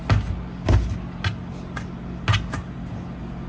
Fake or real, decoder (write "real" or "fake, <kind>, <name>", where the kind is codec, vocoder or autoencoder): real